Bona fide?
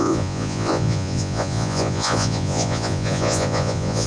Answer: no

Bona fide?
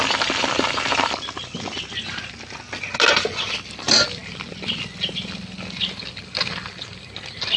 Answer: yes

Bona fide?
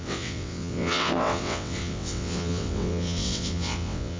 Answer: no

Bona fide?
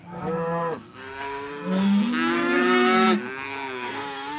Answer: no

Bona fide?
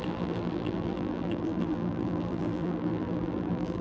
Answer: no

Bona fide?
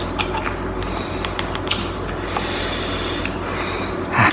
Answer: yes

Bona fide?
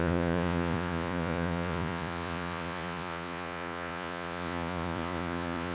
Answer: no